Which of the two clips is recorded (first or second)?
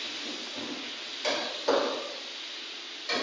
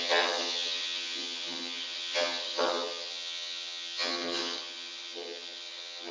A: first